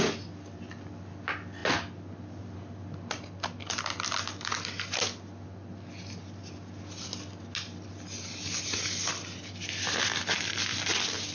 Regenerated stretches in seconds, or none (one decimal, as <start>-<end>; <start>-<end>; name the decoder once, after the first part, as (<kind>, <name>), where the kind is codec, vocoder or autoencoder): none